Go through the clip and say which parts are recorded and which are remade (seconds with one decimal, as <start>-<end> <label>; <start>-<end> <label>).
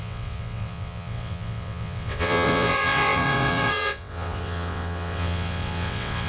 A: 0.0-6.3 remade